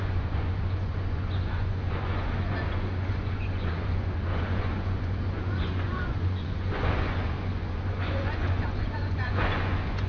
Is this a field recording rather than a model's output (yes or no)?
no